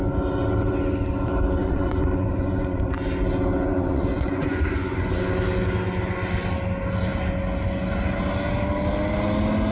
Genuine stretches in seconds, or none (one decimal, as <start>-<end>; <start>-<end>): 0.0-1.6; 2.9-3.7; 5.2-9.7